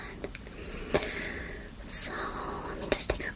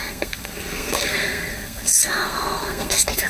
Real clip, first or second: first